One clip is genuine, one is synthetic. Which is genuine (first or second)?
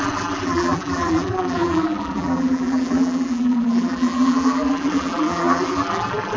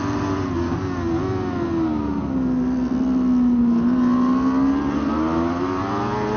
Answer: second